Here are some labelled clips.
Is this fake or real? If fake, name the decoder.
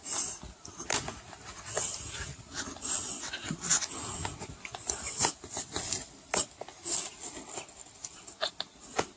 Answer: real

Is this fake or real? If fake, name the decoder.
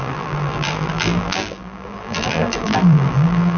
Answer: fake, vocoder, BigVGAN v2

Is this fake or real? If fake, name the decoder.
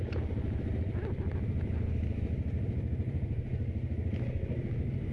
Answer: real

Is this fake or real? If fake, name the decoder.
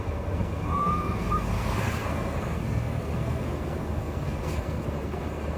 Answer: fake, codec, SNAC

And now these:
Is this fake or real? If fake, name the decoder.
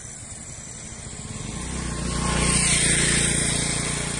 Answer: real